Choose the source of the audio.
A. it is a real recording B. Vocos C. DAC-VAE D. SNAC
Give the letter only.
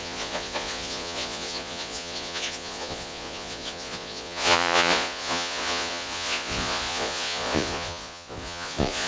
B